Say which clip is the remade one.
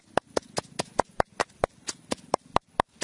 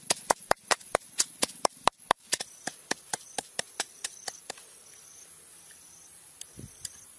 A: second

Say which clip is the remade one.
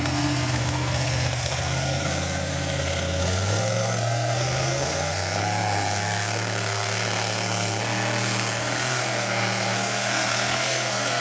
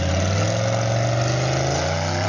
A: first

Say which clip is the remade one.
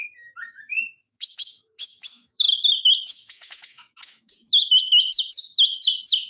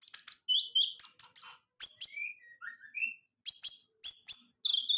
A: first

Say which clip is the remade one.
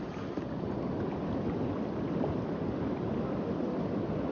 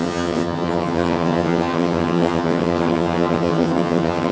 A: second